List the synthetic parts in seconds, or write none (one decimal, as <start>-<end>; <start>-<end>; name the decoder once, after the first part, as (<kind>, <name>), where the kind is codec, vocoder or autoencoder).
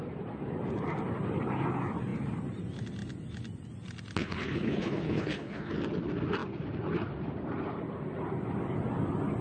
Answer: 4.2-5.7 (codec, HILCodec)